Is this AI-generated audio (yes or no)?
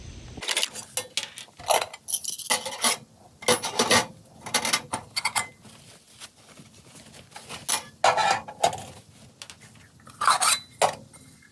no